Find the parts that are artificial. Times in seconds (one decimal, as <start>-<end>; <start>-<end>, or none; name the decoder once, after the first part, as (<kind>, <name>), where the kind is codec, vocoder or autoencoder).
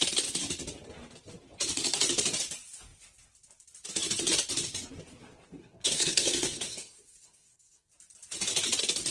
5.6-7.9 (codec, SNAC)